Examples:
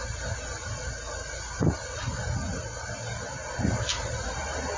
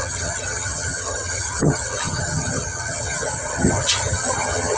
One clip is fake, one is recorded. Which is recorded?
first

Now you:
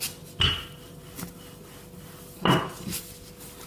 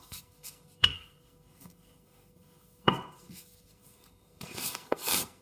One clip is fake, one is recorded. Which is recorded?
first